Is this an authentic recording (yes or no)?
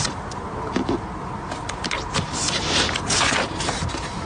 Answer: no